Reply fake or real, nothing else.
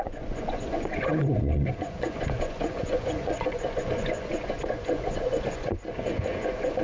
fake